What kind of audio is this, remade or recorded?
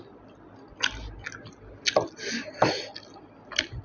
recorded